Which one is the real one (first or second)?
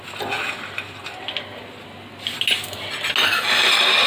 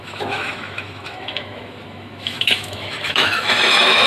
first